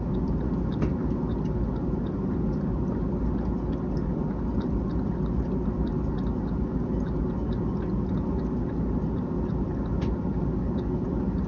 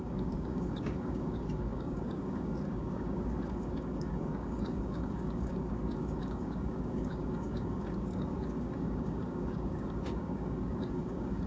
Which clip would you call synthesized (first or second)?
second